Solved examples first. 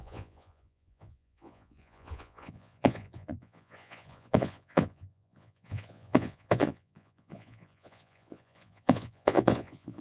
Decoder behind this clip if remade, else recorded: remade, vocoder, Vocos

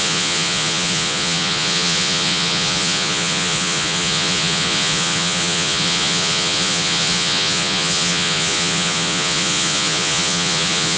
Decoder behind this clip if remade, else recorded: remade, vocoder, Vocos